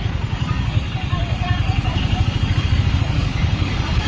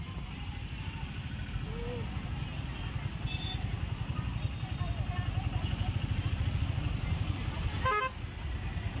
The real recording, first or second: second